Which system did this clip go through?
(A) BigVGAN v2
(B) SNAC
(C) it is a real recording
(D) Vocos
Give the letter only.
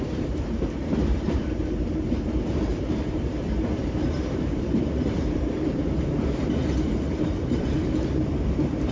A